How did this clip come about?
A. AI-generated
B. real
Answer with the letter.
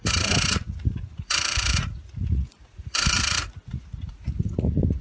A